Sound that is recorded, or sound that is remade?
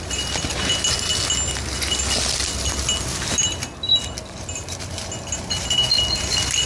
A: recorded